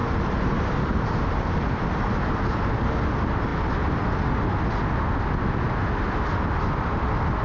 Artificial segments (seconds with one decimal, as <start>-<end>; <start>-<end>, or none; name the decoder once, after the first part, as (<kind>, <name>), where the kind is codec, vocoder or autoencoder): 0.0-1.8 (vocoder, BigVGAN v2)